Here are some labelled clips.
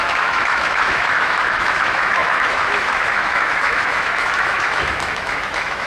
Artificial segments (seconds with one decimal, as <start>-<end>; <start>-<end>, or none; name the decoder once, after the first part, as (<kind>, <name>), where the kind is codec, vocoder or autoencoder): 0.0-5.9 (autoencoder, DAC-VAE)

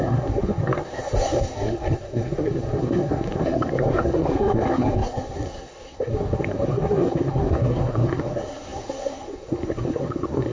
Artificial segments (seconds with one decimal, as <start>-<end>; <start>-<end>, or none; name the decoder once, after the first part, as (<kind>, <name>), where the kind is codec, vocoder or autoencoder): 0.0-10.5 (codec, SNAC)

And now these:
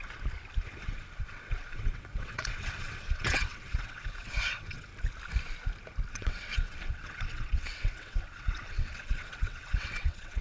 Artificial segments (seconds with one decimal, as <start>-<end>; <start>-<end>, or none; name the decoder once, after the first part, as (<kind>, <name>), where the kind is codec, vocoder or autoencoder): 0.6-4.9 (vocoder, WaveNeXt); 6.1-10.4

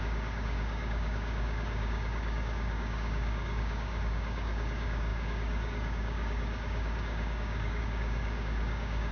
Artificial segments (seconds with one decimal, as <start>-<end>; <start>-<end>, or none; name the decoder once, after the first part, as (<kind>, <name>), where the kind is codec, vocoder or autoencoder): 0.0-9.1 (codec, DAC)

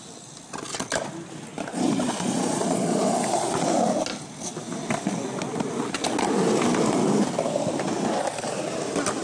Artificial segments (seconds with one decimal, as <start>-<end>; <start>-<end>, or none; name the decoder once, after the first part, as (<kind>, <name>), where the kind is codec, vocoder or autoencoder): 1.7-3.7 (vocoder, Vocos)

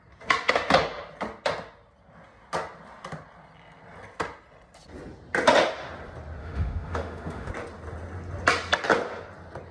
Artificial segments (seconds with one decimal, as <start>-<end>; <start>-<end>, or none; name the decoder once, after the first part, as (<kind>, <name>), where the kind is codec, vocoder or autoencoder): 6.4-7.5 (autoencoder, DAC-VAE)

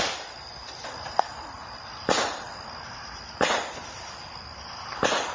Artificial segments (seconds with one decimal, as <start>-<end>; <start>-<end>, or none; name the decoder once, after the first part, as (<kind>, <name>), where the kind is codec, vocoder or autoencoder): none